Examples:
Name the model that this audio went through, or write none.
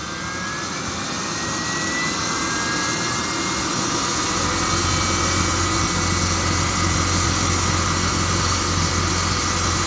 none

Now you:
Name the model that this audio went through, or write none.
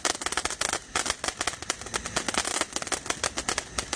none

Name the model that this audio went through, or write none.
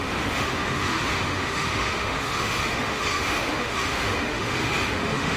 autoencoder, DAC-VAE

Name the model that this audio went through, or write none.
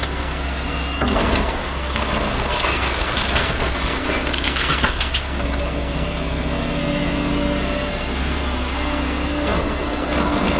codec, SNAC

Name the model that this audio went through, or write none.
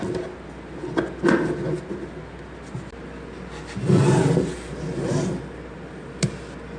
none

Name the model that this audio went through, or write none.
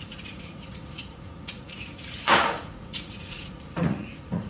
vocoder, Vocos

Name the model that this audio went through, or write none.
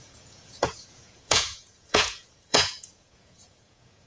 vocoder, Vocos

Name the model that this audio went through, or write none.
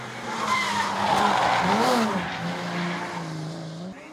none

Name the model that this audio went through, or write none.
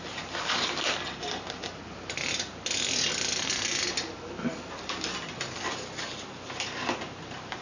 none